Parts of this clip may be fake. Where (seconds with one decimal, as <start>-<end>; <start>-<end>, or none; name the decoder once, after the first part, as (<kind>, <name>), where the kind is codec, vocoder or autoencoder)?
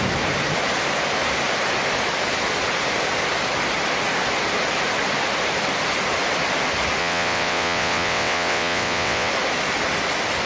7.0-9.3 (vocoder, WaveNeXt)